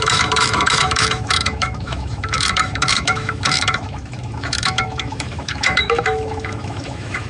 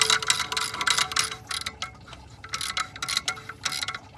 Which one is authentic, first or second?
second